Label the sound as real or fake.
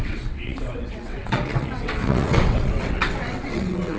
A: fake